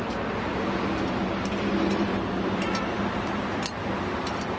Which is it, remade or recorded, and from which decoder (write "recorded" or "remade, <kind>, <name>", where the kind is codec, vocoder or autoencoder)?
recorded